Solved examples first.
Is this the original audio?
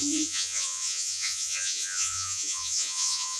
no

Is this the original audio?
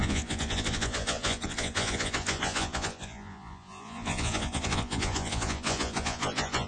no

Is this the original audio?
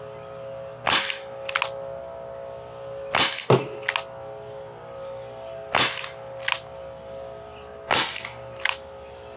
yes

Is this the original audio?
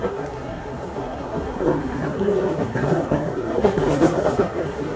no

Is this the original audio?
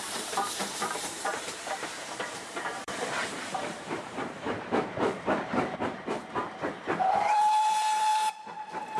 no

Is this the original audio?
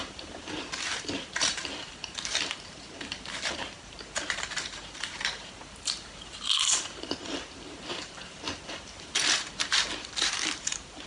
no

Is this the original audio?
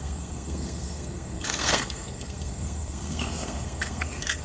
no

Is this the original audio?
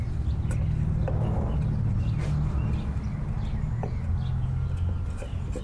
yes